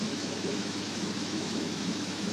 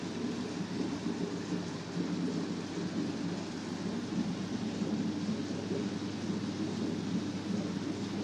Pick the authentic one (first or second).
second